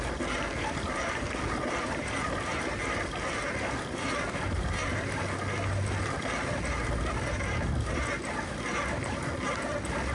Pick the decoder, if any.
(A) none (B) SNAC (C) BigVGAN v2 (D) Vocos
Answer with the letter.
A